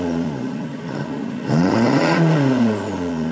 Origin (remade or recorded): remade